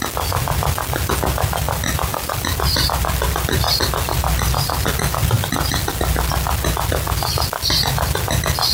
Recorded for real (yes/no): yes